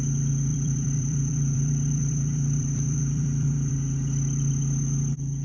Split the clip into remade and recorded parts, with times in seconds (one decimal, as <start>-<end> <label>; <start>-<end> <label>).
0.0-0.5 recorded; 0.5-3.7 remade; 3.7-5.4 recorded